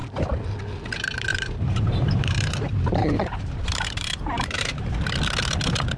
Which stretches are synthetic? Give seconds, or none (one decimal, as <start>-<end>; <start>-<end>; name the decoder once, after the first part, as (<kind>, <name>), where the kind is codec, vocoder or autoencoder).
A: 1.3-4.9 (vocoder, BigVGAN v2)